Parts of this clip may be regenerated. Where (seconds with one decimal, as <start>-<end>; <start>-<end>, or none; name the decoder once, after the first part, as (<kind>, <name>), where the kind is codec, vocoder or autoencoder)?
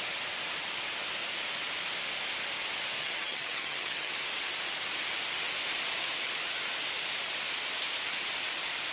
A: 3.0-4.1 (vocoder, HiFi-GAN)